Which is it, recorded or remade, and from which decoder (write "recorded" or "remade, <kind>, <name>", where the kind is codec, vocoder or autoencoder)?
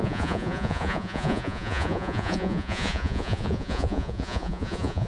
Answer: remade, vocoder, Vocos